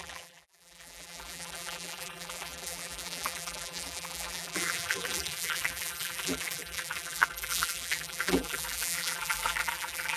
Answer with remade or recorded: remade